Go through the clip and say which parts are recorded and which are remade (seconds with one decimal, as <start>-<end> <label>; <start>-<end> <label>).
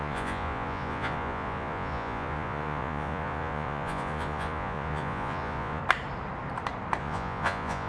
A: 0.0-5.8 remade; 5.8-7.0 recorded; 7.0-7.9 remade